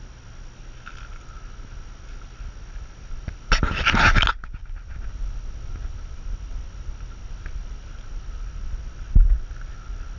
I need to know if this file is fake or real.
real